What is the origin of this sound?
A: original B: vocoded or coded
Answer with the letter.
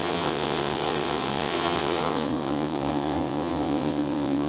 B